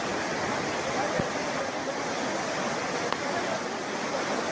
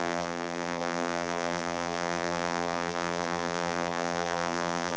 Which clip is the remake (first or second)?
second